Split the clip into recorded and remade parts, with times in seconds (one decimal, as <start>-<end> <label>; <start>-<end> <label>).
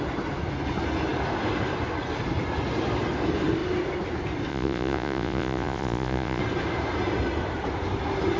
0.0-4.5 recorded; 4.5-6.4 remade; 6.4-8.4 recorded